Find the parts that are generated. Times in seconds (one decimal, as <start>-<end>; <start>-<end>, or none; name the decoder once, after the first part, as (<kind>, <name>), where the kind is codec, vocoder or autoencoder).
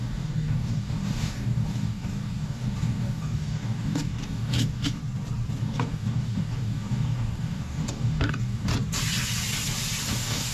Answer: 0.0-5.0 (codec, DAC); 5.6-8.7; 10.1-10.5